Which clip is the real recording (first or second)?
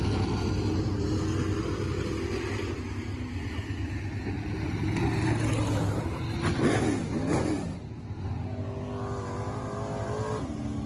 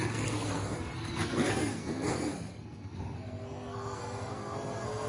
first